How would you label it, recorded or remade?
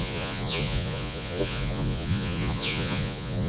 remade